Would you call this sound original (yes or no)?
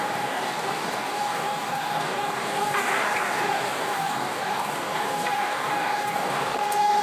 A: no